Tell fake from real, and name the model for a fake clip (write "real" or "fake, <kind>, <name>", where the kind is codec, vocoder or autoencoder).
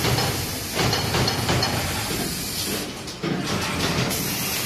real